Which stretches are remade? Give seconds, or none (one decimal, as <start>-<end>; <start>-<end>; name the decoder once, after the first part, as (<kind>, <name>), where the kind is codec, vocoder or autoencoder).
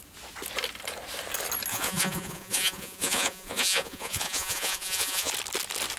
1.7-5.3 (vocoder, Vocos)